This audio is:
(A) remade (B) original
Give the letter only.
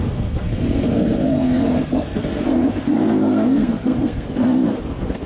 A